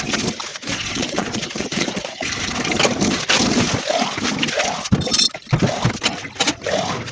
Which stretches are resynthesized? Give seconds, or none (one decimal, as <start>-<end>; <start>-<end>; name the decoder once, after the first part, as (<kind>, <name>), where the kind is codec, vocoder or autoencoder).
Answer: 0.5-2.3 (vocoder, Vocos)